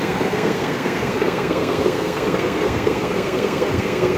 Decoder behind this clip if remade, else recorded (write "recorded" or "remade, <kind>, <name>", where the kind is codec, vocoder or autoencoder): remade, codec, SNAC